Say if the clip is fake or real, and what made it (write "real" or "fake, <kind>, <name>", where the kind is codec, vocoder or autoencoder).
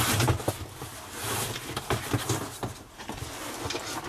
real